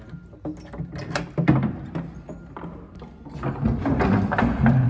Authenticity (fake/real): real